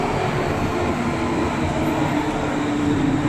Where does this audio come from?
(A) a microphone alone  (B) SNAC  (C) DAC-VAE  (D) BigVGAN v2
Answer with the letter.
A